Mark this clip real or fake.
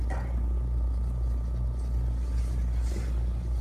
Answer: real